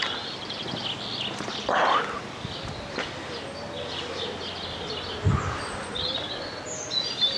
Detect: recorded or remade recorded